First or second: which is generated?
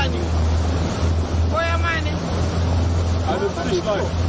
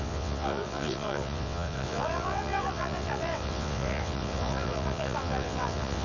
second